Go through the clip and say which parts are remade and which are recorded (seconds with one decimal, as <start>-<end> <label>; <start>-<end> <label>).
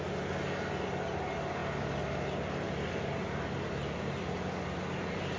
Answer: 0.0-5.4 recorded